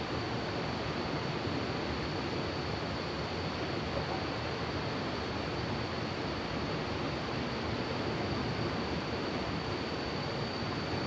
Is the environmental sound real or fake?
real